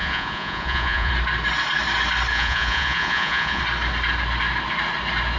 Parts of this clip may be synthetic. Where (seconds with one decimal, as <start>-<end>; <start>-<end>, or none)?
0.0-1.1; 2.3-3.6